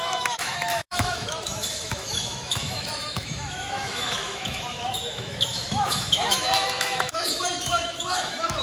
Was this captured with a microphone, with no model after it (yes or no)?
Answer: no